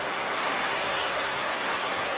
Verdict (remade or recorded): remade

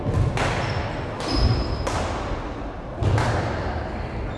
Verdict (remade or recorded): recorded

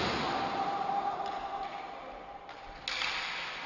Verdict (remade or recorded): recorded